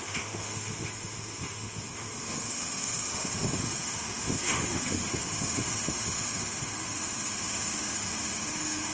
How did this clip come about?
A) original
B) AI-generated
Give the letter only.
B